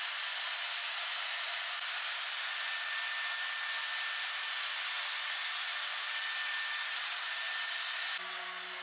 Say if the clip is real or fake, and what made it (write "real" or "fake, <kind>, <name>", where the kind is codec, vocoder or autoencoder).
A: real